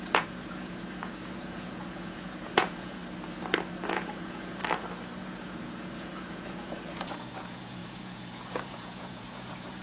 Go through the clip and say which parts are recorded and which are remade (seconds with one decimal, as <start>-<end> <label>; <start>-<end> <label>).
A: 0.0-3.0 remade; 3.0-3.9 recorded; 3.9-4.6 remade; 4.6-5.2 recorded; 5.2-9.8 remade